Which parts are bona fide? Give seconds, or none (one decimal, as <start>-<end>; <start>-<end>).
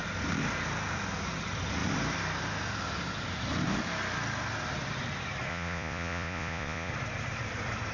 0.0-5.5; 6.9-7.9